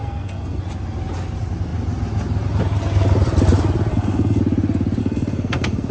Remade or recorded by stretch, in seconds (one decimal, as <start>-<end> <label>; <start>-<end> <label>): 0.0-0.6 remade; 0.6-3.9 recorded; 3.9-4.4 remade; 4.4-5.0 recorded; 5.0-5.9 remade